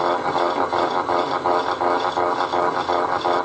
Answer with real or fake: real